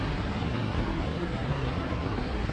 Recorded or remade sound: remade